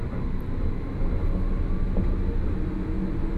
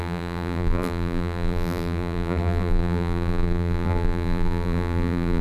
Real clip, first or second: first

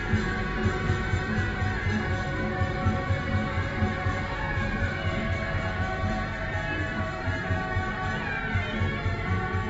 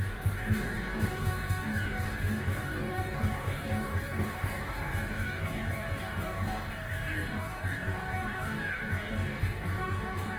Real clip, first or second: first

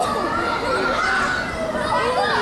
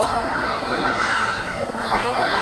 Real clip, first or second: first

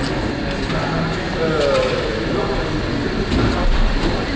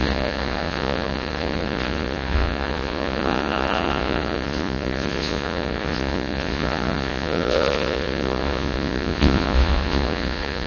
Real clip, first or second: first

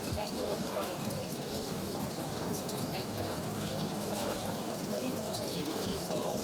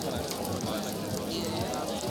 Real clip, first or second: second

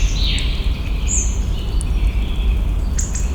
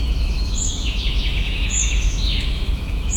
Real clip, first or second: first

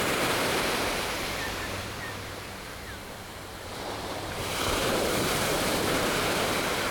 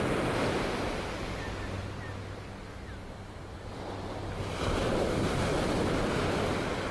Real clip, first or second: second